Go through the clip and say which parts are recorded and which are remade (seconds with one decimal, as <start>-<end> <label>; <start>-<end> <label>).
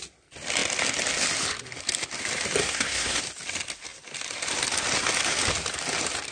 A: 0.0-2.6 recorded; 2.6-3.2 remade; 3.2-6.3 recorded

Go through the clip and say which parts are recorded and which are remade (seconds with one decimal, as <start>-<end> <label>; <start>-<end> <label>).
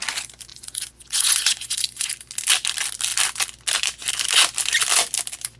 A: 0.0-0.5 recorded; 0.5-2.1 remade; 2.1-5.6 recorded